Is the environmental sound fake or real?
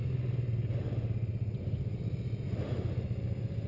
real